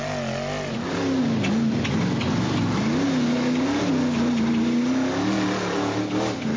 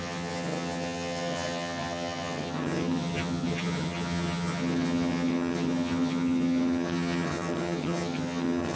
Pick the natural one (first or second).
first